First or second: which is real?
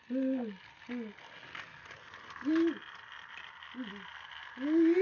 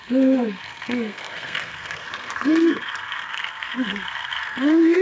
first